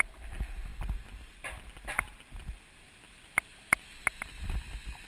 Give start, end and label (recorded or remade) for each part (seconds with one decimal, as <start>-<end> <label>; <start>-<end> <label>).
0.0-5.1 recorded